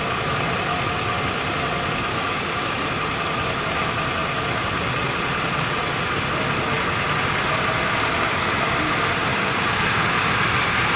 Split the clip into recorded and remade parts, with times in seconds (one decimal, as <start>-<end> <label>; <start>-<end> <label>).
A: 0.0-2.1 recorded; 2.1-2.7 remade; 2.7-9.3 recorded; 9.3-10.3 remade; 10.3-11.0 recorded